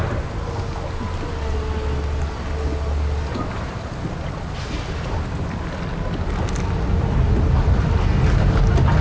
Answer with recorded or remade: recorded